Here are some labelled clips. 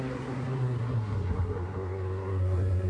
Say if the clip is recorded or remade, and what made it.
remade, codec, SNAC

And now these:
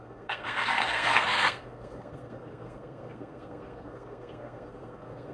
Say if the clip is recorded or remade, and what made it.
remade, codec, SNAC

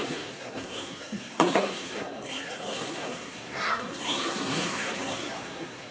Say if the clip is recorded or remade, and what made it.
remade, codec, SNAC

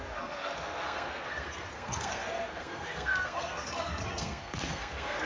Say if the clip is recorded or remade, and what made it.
remade, codec, SNAC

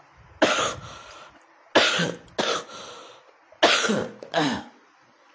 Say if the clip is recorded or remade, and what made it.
recorded